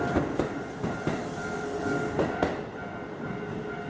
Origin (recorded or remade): recorded